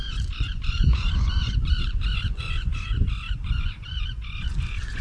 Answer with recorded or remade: remade